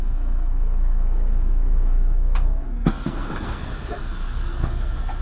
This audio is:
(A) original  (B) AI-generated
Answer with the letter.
B